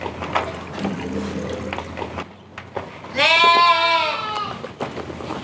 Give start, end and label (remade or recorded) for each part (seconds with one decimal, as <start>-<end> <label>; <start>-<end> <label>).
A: 0.0-5.4 recorded